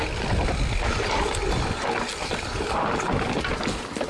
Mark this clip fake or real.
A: real